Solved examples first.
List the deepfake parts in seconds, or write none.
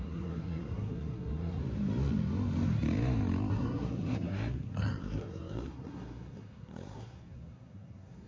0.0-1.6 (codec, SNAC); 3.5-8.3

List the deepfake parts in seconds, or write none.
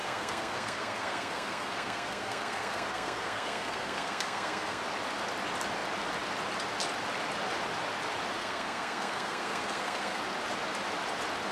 0.0-4.8 (codec, SNAC); 8.4-10.2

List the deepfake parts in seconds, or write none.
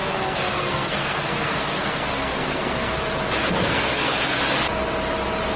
0.0-3.0 (codec, SNAC); 3.4-4.4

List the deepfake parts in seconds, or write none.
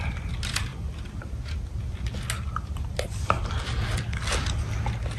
none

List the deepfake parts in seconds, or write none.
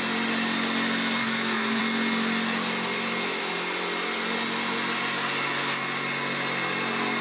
1.2-1.8 (codec, SNAC)